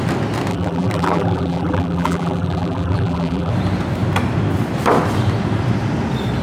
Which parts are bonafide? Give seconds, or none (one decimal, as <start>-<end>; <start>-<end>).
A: 0.0-0.5; 3.5-6.4